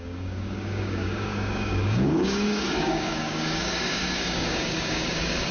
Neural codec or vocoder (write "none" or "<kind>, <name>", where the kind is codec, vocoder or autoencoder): codec, DAC